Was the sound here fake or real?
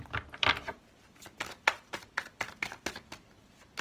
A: real